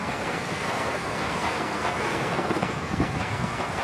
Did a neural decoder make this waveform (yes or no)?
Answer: yes